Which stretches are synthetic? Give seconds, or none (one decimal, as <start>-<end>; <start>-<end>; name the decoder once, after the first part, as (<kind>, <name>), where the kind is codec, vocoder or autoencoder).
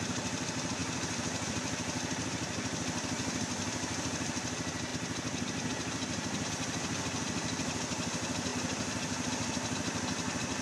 none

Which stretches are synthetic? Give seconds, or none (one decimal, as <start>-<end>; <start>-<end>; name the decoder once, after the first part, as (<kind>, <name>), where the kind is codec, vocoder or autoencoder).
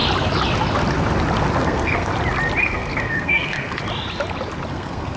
1.6-2.1 (codec, SNAC); 2.6-3.8; 4.7-5.2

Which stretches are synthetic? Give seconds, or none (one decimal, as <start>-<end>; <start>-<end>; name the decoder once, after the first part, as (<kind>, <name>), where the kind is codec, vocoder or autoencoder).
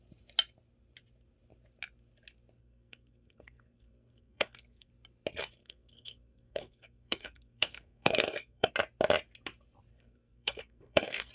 2.6-4.9 (codec, SNAC); 5.6-8.7; 9.9-11.3